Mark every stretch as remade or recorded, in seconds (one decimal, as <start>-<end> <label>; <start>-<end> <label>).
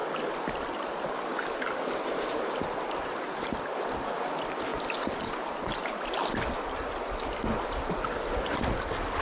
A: 0.0-9.2 recorded